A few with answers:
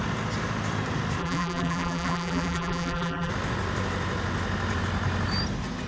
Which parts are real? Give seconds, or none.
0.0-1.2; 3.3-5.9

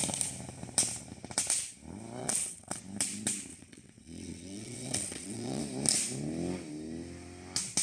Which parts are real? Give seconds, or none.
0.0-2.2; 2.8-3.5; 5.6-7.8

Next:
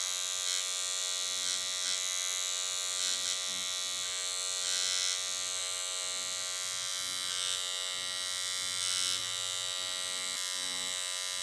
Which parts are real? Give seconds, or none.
0.0-11.4

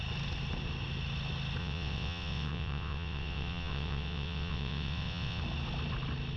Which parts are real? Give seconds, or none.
0.0-1.6; 5.4-6.4